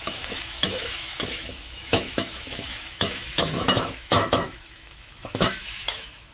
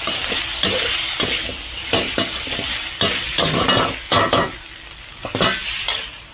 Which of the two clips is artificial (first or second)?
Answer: first